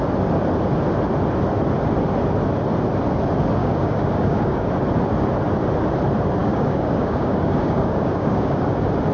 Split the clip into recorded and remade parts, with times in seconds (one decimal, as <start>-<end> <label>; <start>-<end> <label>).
0.0-3.6 recorded; 3.6-4.7 remade; 4.7-6.4 recorded; 6.4-8.6 remade; 8.6-9.1 recorded